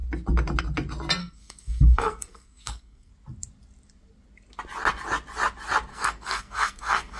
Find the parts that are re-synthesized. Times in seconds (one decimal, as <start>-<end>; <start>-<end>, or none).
1.2-3.1; 5.9-7.2